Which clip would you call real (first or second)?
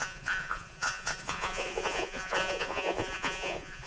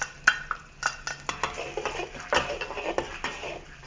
second